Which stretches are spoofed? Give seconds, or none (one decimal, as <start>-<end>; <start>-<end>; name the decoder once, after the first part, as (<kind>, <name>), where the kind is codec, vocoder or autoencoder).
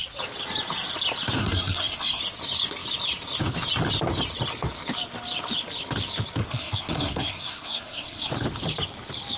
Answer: 1.4-2.2 (codec, SNAC); 6.4-8.3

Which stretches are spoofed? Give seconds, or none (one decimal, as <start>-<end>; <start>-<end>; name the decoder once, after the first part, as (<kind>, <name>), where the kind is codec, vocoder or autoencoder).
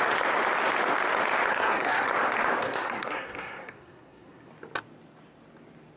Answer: 1.5-2.1 (codec, SNAC); 2.6-4.5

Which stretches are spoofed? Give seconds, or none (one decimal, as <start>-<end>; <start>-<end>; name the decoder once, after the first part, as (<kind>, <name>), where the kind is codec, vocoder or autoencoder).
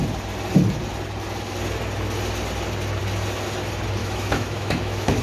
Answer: 4.0-5.2 (autoencoder, DAC-VAE)